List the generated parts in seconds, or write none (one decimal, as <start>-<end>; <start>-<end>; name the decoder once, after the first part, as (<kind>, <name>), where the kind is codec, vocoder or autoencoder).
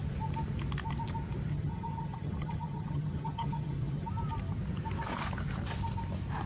1.5-4.1 (vocoder, HiFi-GAN)